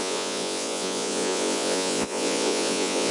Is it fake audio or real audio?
fake